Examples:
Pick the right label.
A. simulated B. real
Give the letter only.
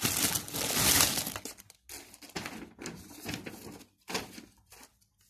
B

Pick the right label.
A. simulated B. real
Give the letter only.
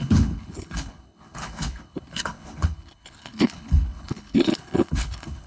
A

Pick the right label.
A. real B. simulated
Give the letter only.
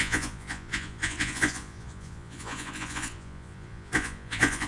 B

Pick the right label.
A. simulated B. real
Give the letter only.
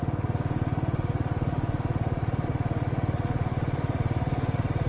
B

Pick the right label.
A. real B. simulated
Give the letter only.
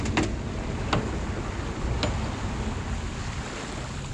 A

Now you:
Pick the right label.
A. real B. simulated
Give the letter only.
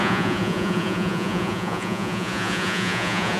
B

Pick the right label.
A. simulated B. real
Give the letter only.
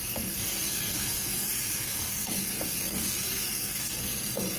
A